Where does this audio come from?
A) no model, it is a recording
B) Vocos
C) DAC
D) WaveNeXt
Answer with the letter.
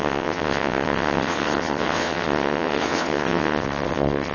D